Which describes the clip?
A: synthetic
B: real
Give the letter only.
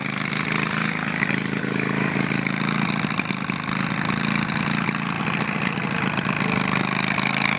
B